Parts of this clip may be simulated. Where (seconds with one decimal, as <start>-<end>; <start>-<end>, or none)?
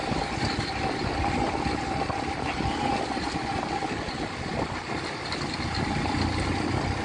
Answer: none